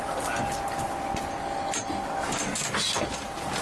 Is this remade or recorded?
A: recorded